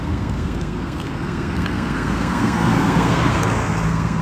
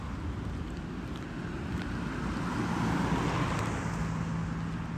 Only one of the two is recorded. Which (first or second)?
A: second